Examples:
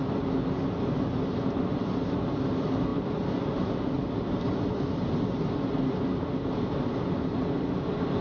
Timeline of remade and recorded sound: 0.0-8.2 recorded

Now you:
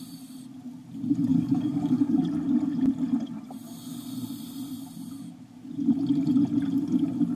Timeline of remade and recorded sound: 0.0-1.3 recorded; 1.3-2.2 remade; 2.2-7.4 recorded

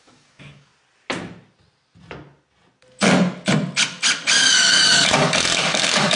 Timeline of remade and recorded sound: 0.0-0.7 remade; 0.7-4.4 recorded; 4.4-6.2 remade

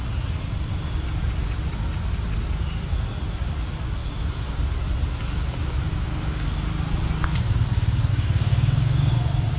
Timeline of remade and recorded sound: 0.0-8.1 recorded; 8.1-9.1 remade; 9.1-9.6 recorded

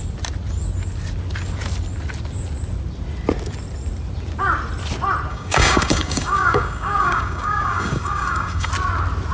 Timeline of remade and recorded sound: 0.0-5.3 recorded; 5.3-8.7 remade; 8.7-9.3 recorded